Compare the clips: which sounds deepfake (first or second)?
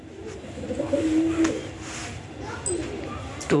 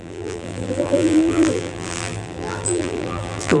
second